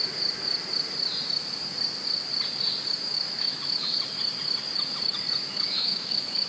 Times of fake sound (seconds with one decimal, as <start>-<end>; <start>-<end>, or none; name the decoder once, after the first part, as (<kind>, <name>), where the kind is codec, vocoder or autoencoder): 3.1-4.0 (autoencoder, DAC-VAE); 5.4-6.5